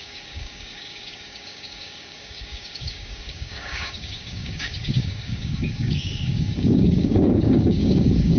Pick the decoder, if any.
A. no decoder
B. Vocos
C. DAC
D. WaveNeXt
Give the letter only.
C